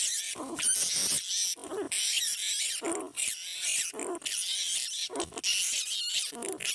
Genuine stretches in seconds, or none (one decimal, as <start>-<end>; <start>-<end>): 0.0-6.7